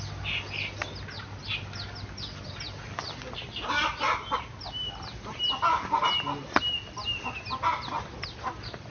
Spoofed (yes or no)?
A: no